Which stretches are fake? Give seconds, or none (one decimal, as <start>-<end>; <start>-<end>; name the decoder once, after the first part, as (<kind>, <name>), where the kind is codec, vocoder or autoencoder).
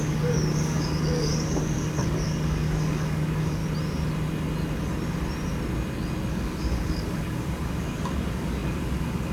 0.0-3.6 (codec, DAC); 6.3-9.3